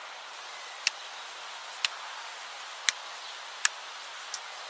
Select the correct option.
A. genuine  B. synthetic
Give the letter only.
A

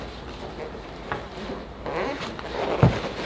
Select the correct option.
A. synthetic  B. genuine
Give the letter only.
B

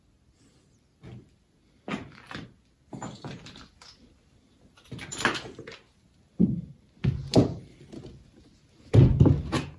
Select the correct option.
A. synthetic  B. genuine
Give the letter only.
B